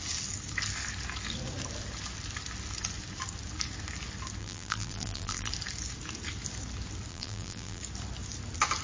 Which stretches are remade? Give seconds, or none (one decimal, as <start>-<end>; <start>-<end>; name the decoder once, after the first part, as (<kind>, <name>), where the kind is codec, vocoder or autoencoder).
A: 4.4-5.5 (vocoder, BigVGAN v2); 7.1-7.8